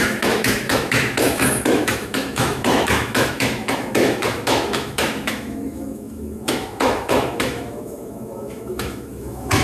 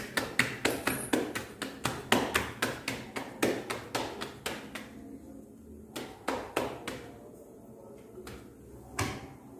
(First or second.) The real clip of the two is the second